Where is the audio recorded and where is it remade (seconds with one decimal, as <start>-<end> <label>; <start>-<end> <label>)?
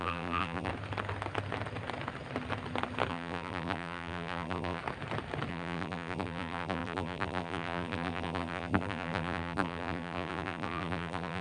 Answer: 0.0-0.7 remade; 0.7-3.1 recorded; 3.1-4.8 remade; 4.8-5.5 recorded; 5.5-11.4 remade